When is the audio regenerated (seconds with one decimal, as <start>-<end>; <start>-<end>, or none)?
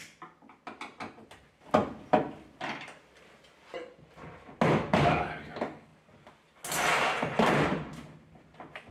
none